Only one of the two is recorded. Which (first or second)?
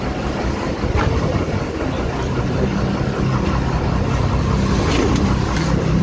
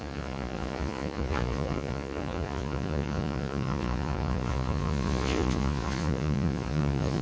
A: first